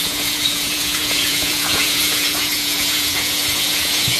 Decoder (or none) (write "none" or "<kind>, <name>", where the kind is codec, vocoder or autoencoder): vocoder, Vocos